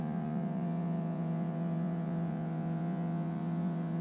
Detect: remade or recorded remade